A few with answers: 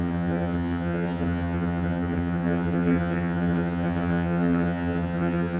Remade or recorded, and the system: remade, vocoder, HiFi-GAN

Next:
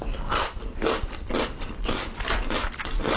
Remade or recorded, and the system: recorded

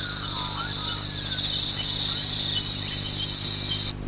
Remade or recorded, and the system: recorded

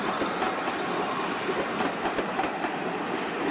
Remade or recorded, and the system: recorded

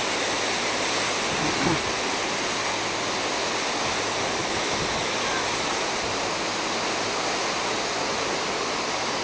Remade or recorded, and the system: recorded